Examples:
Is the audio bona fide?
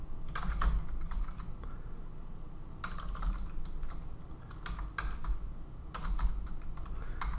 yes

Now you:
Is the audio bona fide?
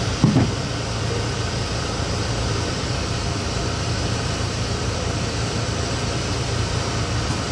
no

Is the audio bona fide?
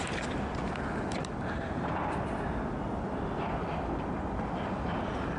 yes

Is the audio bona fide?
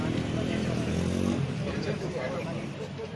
yes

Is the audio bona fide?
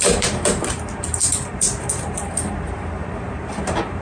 no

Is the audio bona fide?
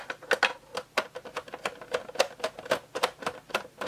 yes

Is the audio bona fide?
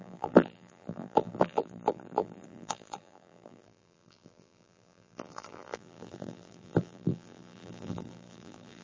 no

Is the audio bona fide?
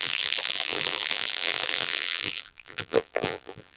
no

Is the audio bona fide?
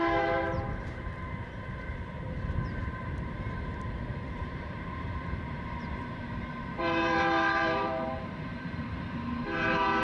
no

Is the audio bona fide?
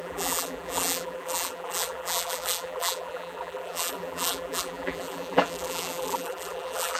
no